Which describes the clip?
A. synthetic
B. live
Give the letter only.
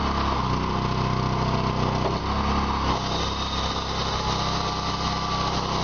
B